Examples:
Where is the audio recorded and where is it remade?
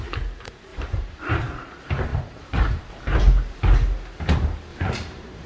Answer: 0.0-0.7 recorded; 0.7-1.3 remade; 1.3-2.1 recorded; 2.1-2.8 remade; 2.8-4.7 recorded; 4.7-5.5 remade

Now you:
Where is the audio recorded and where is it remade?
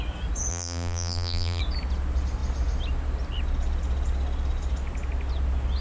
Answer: 0.0-0.5 recorded; 0.5-1.6 remade; 1.6-5.8 recorded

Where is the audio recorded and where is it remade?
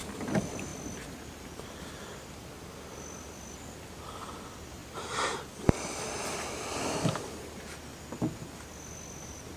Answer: 0.0-0.7 remade; 0.7-3.4 recorded; 3.4-4.8 remade; 4.8-8.8 recorded; 8.8-9.6 remade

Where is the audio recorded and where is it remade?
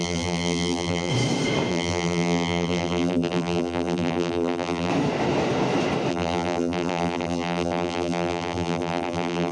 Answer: 0.0-1.1 remade; 1.1-1.7 recorded; 1.7-4.9 remade; 4.9-6.1 recorded; 6.1-9.5 remade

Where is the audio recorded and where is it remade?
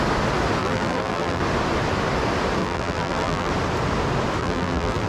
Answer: 0.0-0.6 recorded; 0.6-1.4 remade; 1.4-2.6 recorded; 2.6-3.5 remade; 3.5-4.4 recorded; 4.4-5.1 remade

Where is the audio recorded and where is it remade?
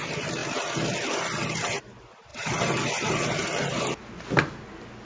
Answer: 0.0-2.3 recorded; 2.3-3.9 remade; 3.9-5.0 recorded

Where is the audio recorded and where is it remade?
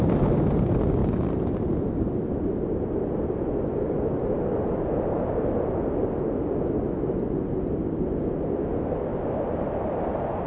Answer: 0.0-1.0 recorded; 1.0-3.2 remade; 3.2-10.5 recorded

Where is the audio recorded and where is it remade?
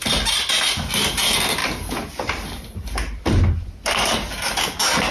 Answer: 0.0-1.6 recorded; 1.6-4.6 remade; 4.6-5.1 recorded